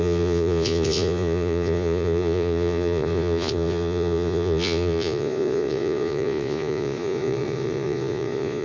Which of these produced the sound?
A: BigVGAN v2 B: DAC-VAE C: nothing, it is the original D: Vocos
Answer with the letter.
D